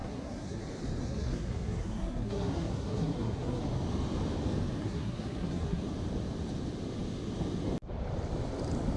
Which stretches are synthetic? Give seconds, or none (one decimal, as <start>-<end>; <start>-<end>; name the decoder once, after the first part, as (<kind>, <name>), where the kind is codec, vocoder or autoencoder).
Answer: 0.0-0.6 (codec, SNAC); 1.0-3.6; 4.8-5.8